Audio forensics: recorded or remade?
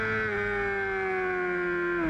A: recorded